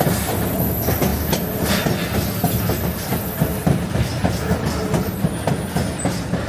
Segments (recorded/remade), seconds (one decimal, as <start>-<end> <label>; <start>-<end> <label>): 0.0-3.5 recorded; 3.5-4.3 remade; 4.3-6.5 recorded